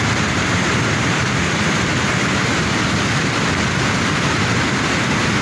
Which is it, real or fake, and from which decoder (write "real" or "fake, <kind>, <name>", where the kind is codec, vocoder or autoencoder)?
real